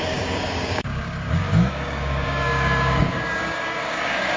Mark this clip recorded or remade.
remade